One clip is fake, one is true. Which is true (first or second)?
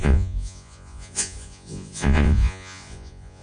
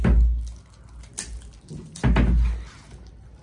second